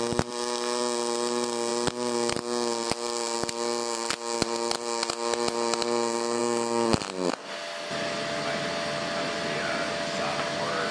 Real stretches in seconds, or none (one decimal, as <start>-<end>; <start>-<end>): 0.0-10.9